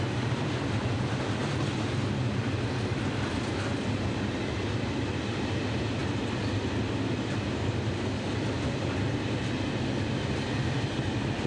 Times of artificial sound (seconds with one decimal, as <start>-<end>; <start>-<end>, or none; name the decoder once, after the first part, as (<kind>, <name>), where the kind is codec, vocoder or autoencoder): none